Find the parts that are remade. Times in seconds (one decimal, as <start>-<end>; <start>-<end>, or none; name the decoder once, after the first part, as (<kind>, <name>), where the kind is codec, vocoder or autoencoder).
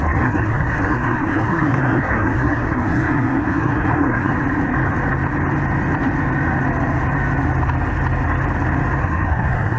0.0-4.3 (codec, SNAC); 9.0-9.8